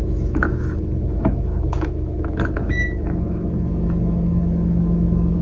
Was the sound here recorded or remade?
remade